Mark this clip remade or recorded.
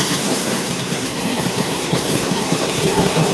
remade